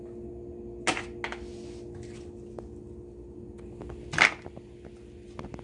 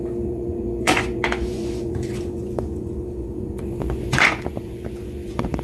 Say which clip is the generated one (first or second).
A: second